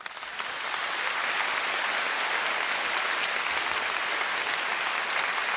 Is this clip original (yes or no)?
yes